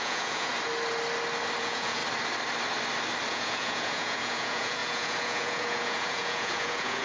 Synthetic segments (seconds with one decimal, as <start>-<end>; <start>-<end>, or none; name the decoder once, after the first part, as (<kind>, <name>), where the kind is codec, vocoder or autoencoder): 0.0-0.5 (vocoder, Vocos); 1.6-2.0; 3.3-7.0